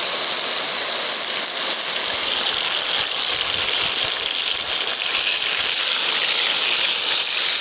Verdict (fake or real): real